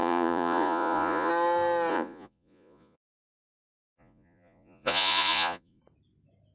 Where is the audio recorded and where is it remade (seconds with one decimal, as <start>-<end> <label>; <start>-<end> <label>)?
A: 0.0-1.3 remade; 1.3-1.9 recorded; 1.9-5.8 remade; 5.8-6.5 recorded